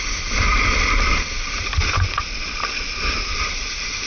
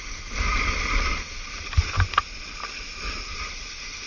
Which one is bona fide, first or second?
second